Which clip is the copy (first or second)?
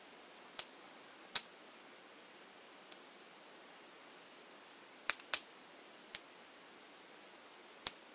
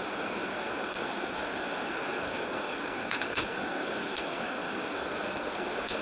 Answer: second